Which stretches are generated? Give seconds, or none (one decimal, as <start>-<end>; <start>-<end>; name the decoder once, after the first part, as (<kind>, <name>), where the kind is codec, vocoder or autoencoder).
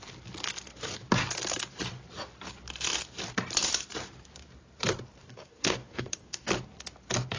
5.2-6.5 (codec, DAC)